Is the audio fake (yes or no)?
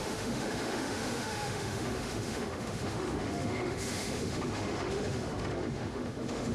yes